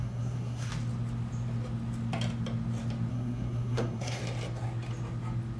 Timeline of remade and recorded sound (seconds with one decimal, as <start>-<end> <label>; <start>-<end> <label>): 0.0-0.7 remade; 0.7-3.1 recorded; 3.1-4.2 remade; 4.2-5.6 recorded